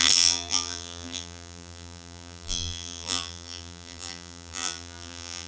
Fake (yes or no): yes